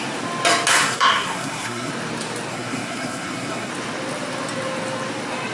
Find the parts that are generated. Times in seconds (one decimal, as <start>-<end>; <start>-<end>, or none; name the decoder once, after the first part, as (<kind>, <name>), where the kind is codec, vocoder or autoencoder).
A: 0.7-1.9 (codec, SNAC); 2.5-3.7